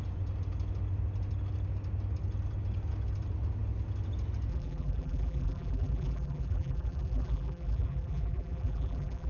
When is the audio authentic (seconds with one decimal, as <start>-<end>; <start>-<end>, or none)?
0.0-4.5